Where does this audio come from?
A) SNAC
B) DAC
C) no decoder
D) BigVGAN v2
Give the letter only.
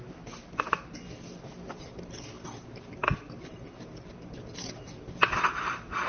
C